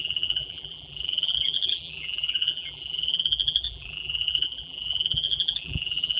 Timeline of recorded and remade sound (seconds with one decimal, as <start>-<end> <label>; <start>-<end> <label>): 0.0-6.2 remade